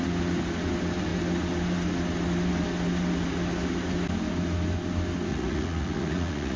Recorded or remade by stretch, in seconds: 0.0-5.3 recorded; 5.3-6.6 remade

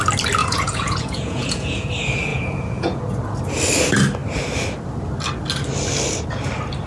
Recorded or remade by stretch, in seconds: 0.0-0.4 recorded; 0.4-1.9 remade; 1.9-2.3 recorded; 2.3-3.0 remade; 3.0-6.9 recorded

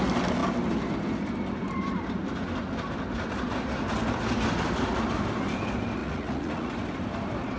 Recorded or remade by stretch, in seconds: 0.0-6.0 recorded; 6.0-6.7 remade; 6.7-7.6 recorded

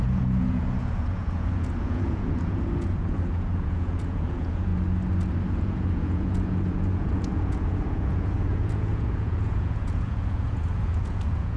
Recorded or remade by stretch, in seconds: 0.0-4.7 remade; 4.7-5.5 recorded; 5.5-11.6 remade